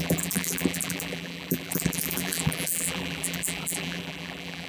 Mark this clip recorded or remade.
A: remade